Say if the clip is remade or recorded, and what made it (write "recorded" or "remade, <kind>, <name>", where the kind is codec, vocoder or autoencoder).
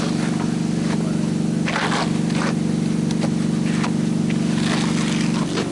recorded